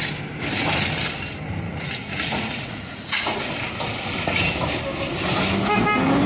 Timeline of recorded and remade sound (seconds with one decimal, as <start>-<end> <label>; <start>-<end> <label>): 0.0-1.7 recorded; 1.7-3.5 remade; 3.5-6.3 recorded